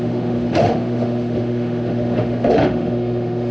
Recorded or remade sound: remade